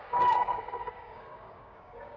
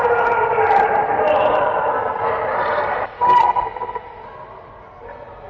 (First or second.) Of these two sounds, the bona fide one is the second